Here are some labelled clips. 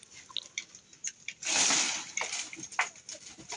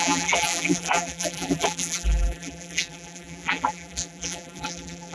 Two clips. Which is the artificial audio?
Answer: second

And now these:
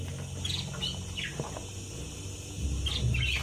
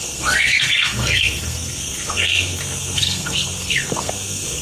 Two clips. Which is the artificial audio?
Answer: second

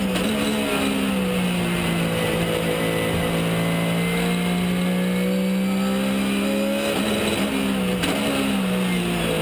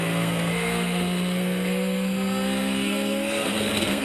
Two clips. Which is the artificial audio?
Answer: second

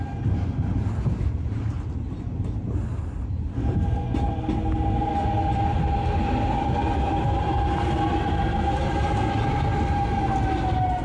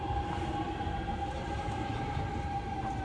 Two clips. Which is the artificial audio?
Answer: second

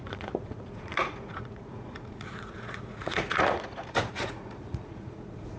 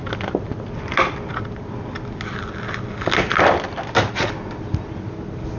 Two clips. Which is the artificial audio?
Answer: first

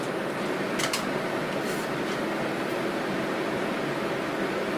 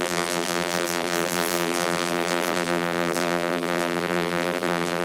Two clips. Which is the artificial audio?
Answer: second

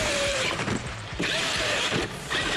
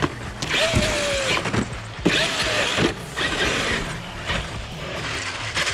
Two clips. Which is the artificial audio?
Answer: first